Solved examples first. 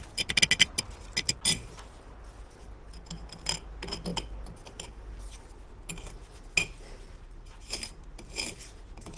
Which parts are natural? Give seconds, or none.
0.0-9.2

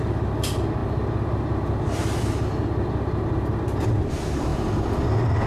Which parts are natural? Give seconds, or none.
0.0-5.5

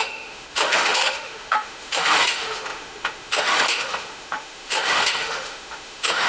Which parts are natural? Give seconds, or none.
none

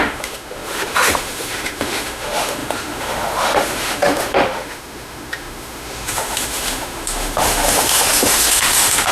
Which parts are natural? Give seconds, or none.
none

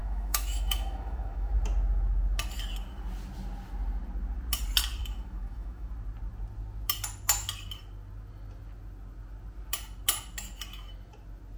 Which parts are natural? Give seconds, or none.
1.5-5.0; 5.9-11.6

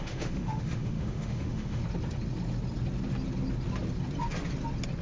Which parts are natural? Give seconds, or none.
1.8-5.0